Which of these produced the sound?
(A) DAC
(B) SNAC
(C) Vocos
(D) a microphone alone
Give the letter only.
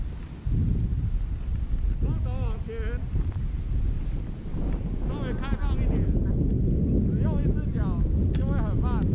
D